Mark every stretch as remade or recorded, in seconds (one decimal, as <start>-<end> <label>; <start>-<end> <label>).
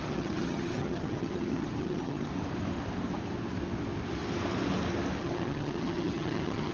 0.0-2.3 remade; 2.3-5.2 recorded; 5.2-6.7 remade